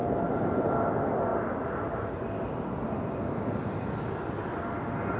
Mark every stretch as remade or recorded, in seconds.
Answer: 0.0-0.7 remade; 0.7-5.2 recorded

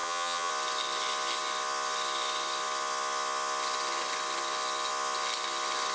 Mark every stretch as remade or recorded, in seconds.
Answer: 0.0-0.5 remade; 0.5-5.9 recorded

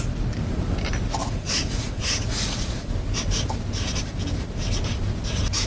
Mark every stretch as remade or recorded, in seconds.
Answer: 0.0-1.2 recorded; 1.2-2.9 remade; 2.9-5.7 recorded